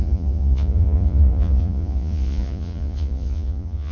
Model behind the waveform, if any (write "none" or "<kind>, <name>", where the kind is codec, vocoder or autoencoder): vocoder, Vocos